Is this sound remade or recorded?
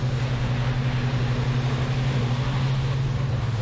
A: recorded